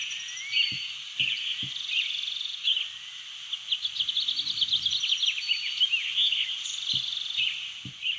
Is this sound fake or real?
real